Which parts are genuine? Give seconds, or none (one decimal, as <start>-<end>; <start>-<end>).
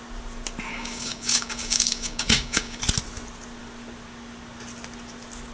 0.0-0.7; 2.8-5.5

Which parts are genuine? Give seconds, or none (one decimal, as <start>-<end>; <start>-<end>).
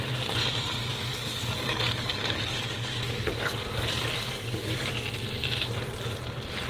0.0-0.9; 4.9-6.7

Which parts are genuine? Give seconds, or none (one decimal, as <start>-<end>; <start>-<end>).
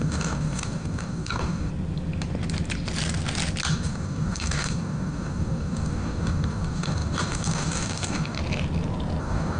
1.7-3.7; 8.4-9.2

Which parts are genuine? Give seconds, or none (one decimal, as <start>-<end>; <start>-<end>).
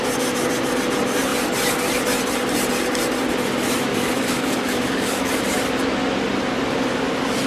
0.0-3.9; 5.4-7.5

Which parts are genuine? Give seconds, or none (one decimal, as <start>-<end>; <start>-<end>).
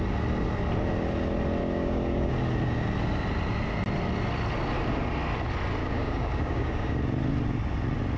0.0-1.6; 2.3-5.8; 6.9-8.2